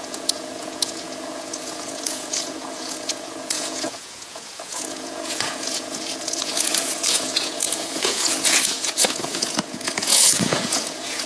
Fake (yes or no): yes